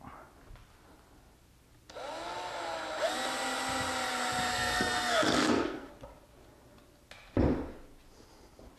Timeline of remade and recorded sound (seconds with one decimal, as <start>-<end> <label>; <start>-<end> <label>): 0.0-4.5 recorded; 4.5-5.9 remade; 5.9-8.8 recorded